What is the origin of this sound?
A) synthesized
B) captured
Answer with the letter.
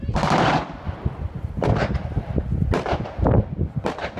B